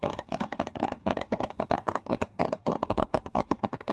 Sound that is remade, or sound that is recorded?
remade